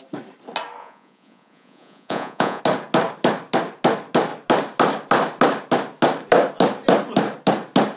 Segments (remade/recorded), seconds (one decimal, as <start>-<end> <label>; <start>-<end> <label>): 0.0-0.8 recorded; 0.8-2.6 remade; 2.6-8.0 recorded